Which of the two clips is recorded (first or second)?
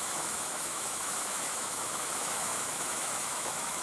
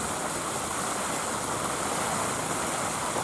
second